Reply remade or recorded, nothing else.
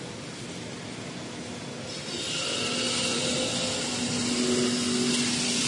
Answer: recorded